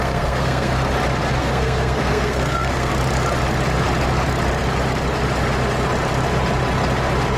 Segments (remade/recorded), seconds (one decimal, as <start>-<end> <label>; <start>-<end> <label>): 0.0-0.7 remade; 0.7-1.4 recorded; 1.4-2.9 remade; 2.9-7.4 recorded

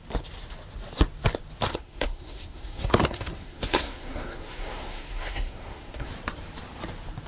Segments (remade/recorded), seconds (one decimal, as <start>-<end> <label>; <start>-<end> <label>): 0.0-1.7 recorded; 1.7-6.1 remade; 6.1-7.3 recorded